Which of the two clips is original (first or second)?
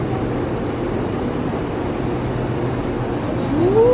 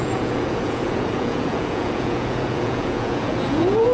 first